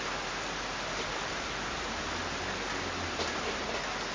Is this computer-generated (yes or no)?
no